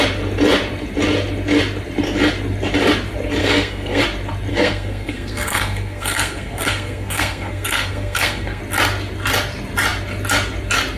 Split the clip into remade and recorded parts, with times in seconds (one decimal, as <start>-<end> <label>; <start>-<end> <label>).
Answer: 0.0-3.4 recorded; 3.4-4.0 remade; 4.0-4.5 recorded; 4.5-8.6 remade; 8.6-11.0 recorded